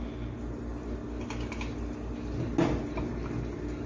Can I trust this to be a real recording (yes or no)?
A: yes